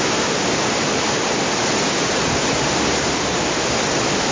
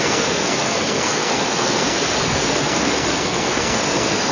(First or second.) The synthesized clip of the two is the second